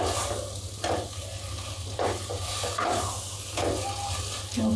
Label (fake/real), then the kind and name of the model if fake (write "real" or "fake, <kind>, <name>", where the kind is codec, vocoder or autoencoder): real